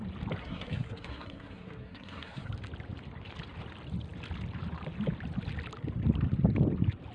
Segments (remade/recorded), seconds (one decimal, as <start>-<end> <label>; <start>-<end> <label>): 0.0-0.4 recorded; 0.4-2.5 remade; 2.5-7.1 recorded